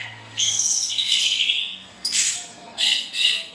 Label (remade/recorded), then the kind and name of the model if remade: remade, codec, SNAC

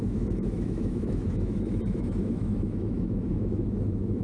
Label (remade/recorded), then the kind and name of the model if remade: remade, autoencoder, DAC-VAE